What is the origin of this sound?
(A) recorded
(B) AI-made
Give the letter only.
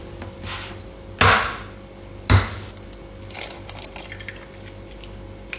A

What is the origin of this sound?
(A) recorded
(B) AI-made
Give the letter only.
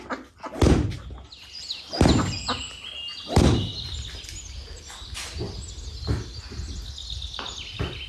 A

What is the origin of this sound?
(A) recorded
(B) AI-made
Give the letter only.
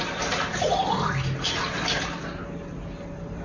A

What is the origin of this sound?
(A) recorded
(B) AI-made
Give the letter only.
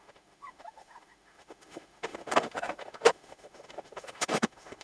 B